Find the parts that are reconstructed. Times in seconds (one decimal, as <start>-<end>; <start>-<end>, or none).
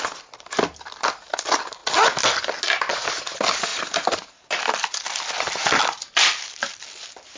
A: none